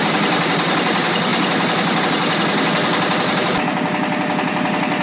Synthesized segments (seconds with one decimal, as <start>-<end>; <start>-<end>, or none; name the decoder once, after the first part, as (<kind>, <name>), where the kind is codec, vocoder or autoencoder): none